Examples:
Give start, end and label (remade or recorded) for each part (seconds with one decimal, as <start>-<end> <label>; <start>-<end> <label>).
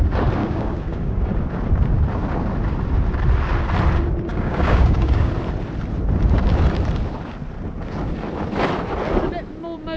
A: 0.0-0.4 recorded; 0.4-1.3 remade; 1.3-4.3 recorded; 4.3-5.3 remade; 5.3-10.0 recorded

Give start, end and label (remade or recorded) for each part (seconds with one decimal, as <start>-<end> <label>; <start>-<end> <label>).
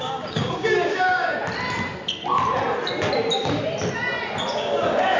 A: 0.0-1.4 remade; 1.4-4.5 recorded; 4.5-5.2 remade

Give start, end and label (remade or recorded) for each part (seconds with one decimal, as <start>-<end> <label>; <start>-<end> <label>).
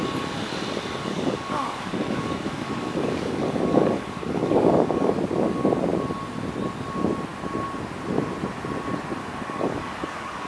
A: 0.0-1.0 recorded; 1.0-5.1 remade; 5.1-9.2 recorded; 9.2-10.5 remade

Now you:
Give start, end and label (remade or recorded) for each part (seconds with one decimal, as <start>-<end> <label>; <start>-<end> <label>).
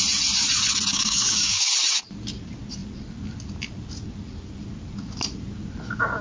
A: 0.0-0.9 recorded; 0.9-1.7 remade; 1.7-6.2 recorded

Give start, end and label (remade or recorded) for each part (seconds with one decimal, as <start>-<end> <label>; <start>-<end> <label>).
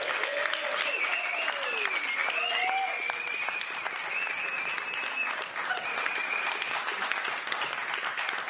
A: 0.0-5.9 recorded; 5.9-7.8 remade; 7.8-8.5 recorded